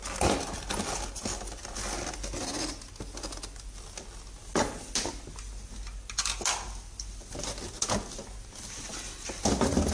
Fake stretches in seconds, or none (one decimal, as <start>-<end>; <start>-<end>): none